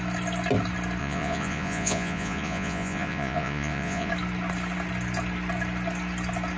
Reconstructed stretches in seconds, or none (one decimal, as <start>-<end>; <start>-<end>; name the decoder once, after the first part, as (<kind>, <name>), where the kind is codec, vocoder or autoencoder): 1.0-4.1 (vocoder, Vocos)